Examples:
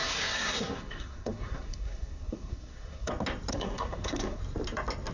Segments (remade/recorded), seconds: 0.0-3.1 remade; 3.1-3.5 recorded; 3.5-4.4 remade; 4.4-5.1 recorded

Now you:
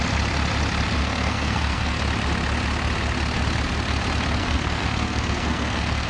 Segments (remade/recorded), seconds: 0.0-1.0 recorded; 1.0-2.0 remade; 2.0-4.4 recorded; 4.4-6.1 remade

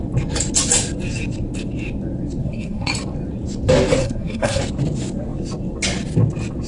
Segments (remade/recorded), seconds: 0.0-2.4 recorded; 2.4-2.9 remade; 2.9-4.0 recorded; 4.0-4.6 remade; 4.6-6.7 recorded

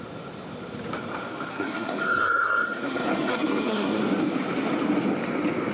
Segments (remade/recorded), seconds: 0.0-1.5 recorded; 1.5-4.0 remade; 4.0-5.7 recorded